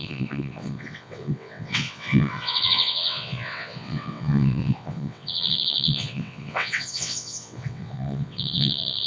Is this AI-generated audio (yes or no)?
yes